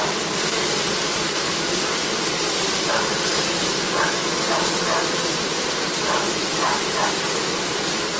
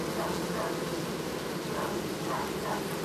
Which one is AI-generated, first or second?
first